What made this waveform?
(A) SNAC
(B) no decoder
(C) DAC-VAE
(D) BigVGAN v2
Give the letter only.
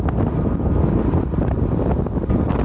B